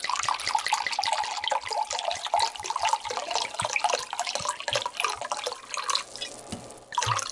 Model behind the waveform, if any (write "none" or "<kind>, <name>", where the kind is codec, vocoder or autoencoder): none